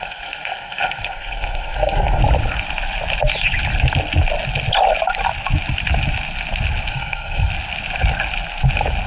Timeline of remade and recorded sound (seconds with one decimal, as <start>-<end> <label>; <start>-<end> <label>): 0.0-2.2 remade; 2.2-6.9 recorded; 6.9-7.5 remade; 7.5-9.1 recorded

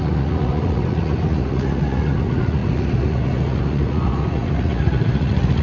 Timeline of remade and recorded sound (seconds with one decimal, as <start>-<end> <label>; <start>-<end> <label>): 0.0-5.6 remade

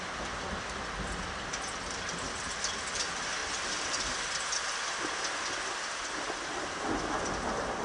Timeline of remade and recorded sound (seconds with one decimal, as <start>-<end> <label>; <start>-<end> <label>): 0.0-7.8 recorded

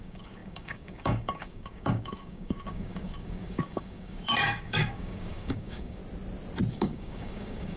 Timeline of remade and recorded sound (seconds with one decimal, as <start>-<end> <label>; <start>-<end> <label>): 0.0-6.0 remade; 6.0-6.7 recorded; 6.7-7.8 remade

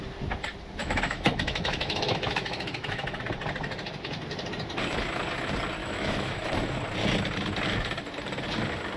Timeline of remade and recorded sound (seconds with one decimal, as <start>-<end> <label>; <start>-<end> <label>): 0.0-0.8 recorded; 0.8-3.2 remade; 3.2-5.8 recorded; 5.8-6.5 remade; 6.5-9.0 recorded

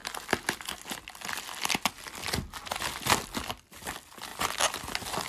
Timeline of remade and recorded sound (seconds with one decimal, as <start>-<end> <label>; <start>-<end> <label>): 0.0-5.3 recorded

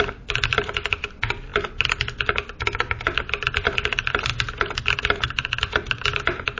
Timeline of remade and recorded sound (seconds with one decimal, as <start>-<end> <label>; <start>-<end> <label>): 0.0-6.6 recorded

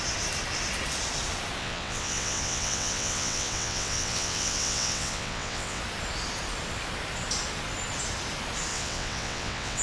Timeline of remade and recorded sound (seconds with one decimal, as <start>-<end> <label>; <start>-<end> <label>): 0.0-1.6 recorded; 1.6-5.8 remade; 5.8-8.7 recorded; 8.7-9.8 remade